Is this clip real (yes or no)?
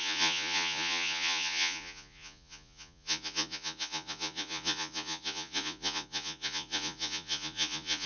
no